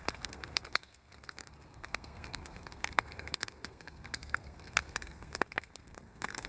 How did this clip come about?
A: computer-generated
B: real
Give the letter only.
A